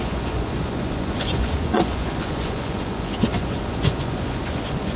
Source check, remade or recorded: remade